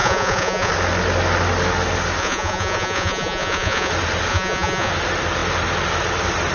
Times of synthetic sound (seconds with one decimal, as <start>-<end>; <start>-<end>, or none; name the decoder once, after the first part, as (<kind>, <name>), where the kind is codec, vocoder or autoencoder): 0.0-0.7 (vocoder, Vocos); 2.2-3.9; 4.3-4.9